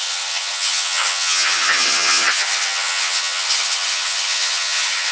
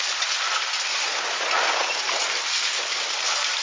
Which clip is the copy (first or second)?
first